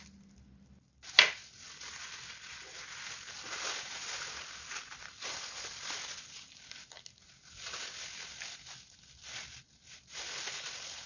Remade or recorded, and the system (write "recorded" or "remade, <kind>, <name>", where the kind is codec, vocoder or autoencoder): recorded